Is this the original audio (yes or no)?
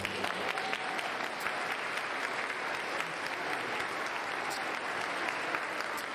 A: yes